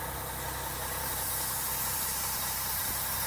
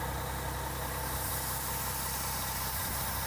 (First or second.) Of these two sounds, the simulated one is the first